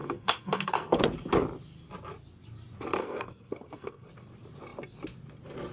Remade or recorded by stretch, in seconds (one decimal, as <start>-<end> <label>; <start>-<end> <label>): 0.0-1.0 remade; 1.0-3.0 recorded; 3.0-4.1 remade; 4.1-5.7 recorded